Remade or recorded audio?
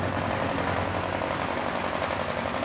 recorded